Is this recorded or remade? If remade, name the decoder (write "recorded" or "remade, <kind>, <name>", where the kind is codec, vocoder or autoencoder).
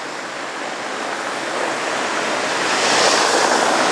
recorded